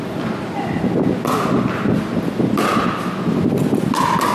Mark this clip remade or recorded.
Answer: recorded